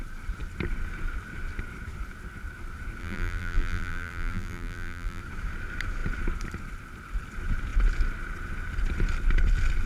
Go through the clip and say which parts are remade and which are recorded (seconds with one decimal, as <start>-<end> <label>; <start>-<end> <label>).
0.0-3.0 recorded; 3.0-5.2 remade; 5.2-9.9 recorded